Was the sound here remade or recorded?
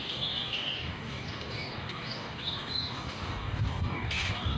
remade